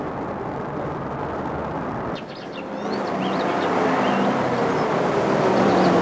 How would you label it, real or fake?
real